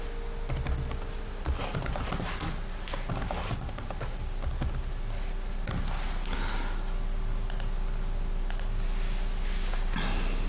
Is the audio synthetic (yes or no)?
no